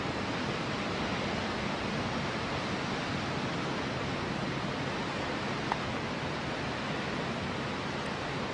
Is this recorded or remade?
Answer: recorded